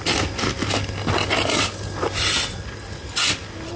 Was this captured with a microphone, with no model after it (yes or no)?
yes